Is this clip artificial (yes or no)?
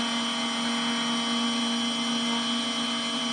no